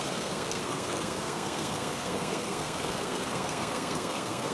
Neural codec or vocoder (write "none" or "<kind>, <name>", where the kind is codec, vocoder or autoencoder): codec, SNAC